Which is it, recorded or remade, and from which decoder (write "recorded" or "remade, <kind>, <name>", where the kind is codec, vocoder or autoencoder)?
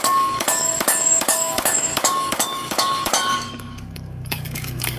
remade, codec, DAC